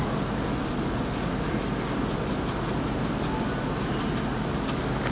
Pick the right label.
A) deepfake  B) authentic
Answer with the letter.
B